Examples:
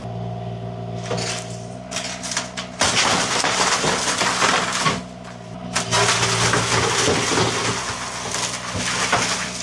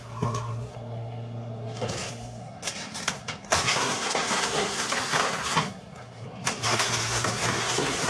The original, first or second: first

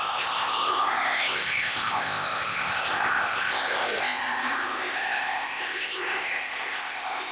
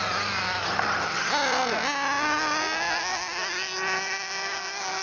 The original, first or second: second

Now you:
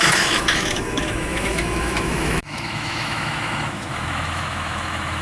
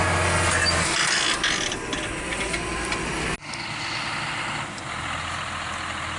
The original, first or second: second